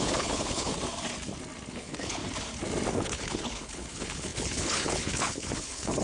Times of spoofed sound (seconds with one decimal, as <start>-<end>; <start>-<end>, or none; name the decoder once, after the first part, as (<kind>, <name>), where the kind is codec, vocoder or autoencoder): 0.0-0.7 (codec, HILCodec); 1.7-2.2; 2.9-6.0